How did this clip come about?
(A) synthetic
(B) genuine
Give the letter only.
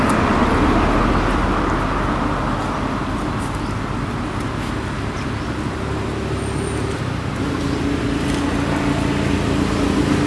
B